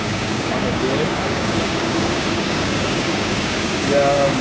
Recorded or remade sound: remade